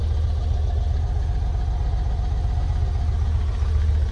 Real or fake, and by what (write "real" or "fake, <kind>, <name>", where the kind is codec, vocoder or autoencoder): real